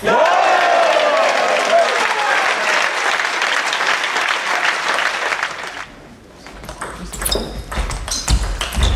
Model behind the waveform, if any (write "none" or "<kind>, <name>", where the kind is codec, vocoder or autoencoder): none